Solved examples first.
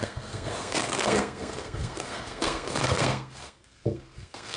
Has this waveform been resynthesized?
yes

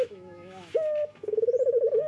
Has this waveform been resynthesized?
yes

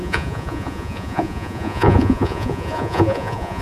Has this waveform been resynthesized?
yes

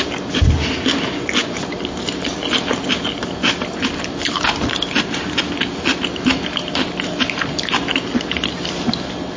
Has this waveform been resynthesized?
no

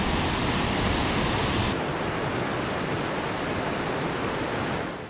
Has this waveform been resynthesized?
no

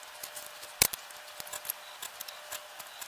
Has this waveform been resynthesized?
no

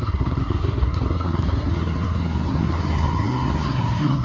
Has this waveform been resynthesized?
yes